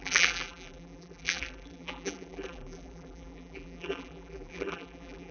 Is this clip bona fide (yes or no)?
no